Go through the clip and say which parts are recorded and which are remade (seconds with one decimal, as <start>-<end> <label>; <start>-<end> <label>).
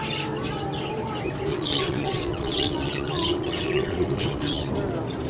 0.0-1.5 recorded; 1.5-4.7 remade; 4.7-5.3 recorded